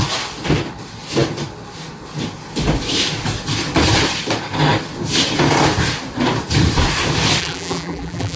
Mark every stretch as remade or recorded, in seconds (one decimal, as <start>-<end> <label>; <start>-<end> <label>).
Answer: 0.0-7.4 recorded; 7.4-8.4 remade